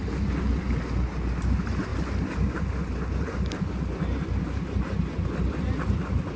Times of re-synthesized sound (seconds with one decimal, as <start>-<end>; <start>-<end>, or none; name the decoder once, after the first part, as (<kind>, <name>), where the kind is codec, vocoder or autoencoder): none